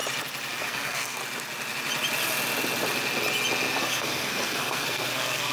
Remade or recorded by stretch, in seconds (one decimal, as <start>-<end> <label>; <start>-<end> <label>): 0.0-0.6 recorded; 0.6-1.2 remade; 1.2-3.8 recorded; 3.8-5.5 remade